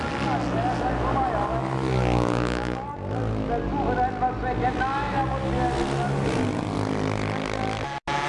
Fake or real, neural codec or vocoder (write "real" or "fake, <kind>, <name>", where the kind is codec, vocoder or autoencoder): real